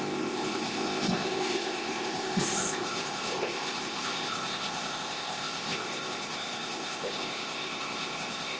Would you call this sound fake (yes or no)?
yes